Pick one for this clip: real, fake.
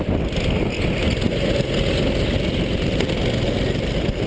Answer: real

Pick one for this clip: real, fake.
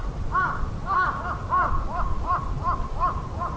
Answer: real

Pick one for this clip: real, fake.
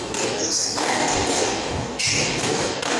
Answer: fake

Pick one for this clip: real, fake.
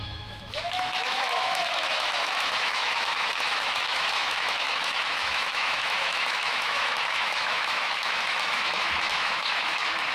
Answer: fake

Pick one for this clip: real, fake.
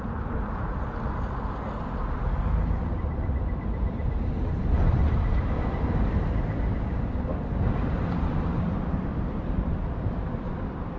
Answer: real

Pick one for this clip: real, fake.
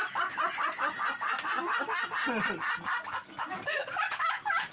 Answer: real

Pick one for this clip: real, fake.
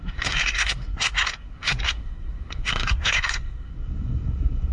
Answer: fake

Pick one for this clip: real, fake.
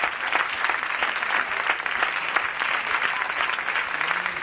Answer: real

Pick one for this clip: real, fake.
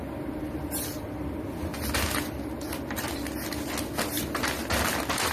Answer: real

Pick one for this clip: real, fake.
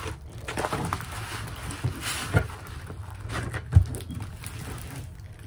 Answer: real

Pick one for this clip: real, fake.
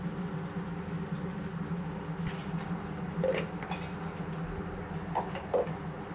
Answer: real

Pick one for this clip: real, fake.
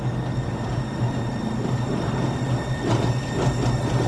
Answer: real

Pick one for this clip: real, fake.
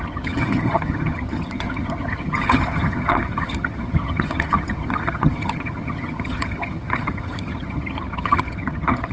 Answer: fake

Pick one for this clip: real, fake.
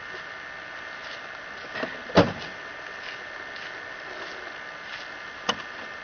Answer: real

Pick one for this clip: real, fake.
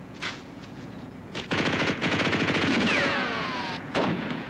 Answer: fake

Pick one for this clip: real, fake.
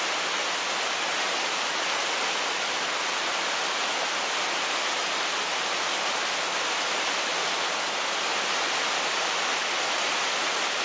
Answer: real